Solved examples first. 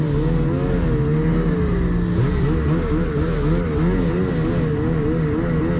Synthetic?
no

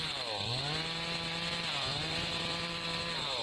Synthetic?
yes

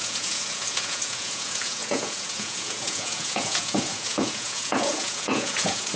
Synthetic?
yes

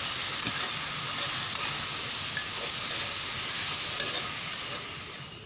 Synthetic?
no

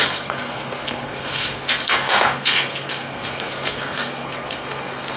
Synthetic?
yes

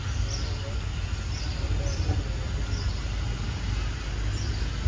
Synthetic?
no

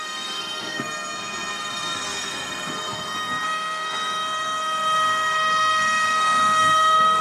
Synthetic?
yes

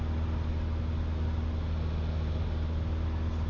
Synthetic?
no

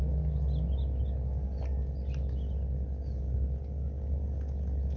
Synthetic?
no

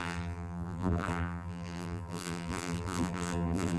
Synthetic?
yes